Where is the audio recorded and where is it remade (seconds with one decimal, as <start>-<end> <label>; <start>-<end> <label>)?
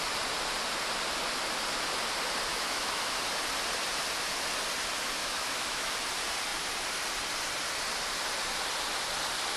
0.0-2.5 recorded; 2.5-3.2 remade; 3.2-5.2 recorded; 5.2-5.9 remade; 5.9-9.6 recorded